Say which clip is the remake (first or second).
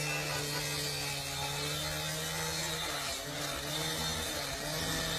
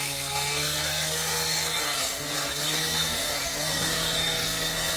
second